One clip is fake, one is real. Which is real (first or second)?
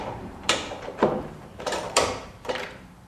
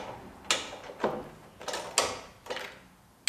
second